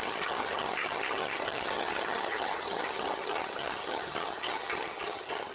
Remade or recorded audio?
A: remade